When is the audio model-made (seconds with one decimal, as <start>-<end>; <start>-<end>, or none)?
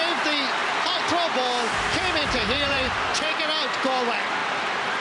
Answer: 0.6-1.1; 2.2-3.4; 4.4-5.0